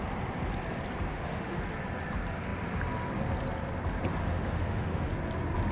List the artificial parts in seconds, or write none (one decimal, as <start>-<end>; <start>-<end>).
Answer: 1.1-1.6; 4.2-5.1